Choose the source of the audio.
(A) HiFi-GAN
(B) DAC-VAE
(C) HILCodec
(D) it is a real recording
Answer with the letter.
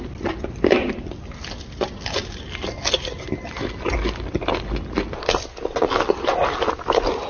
D